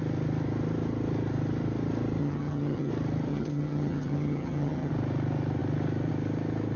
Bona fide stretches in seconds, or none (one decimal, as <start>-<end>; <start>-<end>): 0.0-2.2; 2.9-3.3; 4.9-6.8